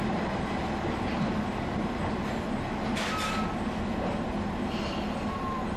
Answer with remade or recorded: recorded